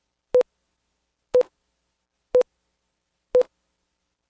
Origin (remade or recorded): recorded